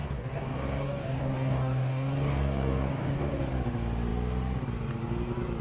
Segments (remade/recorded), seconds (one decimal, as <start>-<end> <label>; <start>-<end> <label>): 0.0-3.4 remade; 3.4-5.6 recorded